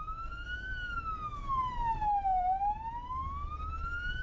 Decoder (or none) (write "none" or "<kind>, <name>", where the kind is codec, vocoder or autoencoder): none